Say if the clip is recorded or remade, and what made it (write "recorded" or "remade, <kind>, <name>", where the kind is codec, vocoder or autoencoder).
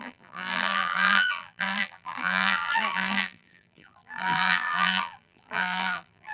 remade, vocoder, BigVGAN v2